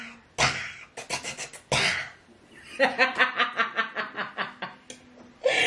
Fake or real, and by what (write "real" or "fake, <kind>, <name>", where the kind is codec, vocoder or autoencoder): real